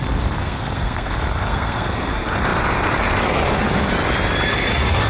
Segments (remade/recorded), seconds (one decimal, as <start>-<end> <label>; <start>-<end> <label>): 0.0-0.4 recorded; 0.4-1.1 remade; 1.1-1.5 recorded; 1.5-2.1 remade; 2.1-5.1 recorded